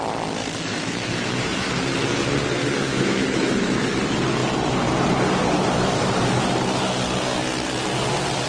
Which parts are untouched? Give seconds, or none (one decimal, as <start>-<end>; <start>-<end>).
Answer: 0.0-0.7; 1.7-2.6; 4.0-8.5